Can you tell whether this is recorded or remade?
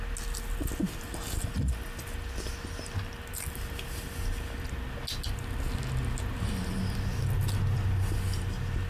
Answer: recorded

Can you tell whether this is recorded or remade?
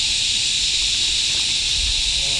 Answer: recorded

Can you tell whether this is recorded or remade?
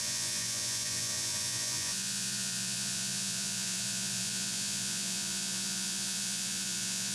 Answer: remade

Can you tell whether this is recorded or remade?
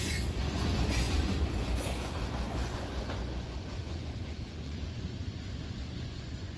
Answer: remade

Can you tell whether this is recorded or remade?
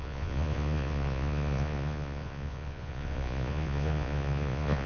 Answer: remade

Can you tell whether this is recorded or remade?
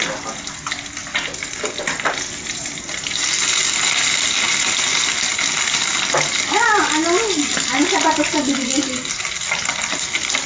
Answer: recorded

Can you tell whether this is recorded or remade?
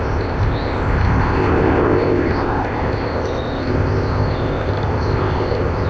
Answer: remade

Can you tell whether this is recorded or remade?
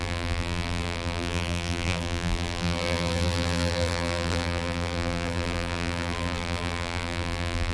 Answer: remade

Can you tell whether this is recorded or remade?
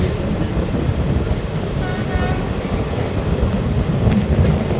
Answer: recorded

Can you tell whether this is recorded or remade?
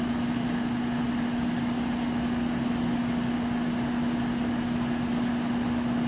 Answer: recorded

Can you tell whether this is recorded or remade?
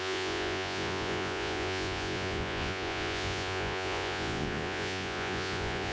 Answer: remade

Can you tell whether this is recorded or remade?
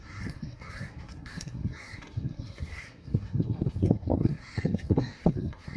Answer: remade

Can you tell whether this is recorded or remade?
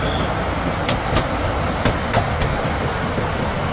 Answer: recorded